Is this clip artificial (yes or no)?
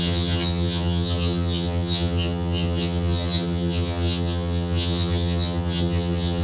yes